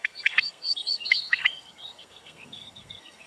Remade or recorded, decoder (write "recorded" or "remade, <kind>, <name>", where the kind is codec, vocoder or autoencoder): remade, codec, SNAC